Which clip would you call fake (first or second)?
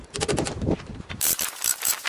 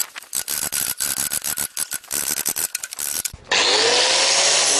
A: first